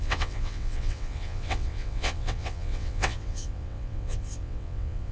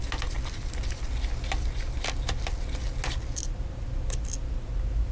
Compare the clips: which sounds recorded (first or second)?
second